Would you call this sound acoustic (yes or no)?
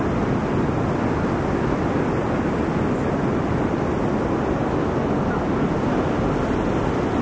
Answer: yes